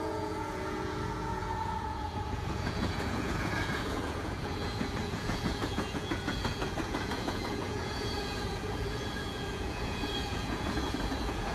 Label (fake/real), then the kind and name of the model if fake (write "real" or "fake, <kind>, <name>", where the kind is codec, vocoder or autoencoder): fake, vocoder, Vocos